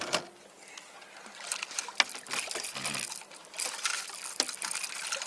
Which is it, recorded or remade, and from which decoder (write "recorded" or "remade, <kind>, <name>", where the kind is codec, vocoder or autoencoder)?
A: recorded